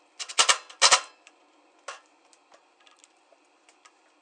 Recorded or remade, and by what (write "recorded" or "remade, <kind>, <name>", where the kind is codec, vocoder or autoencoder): recorded